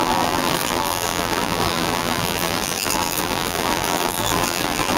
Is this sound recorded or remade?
remade